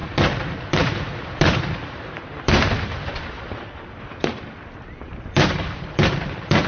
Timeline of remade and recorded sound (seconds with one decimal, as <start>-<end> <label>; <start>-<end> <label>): 0.0-6.7 remade